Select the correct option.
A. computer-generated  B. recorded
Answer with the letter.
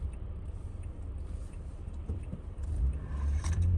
A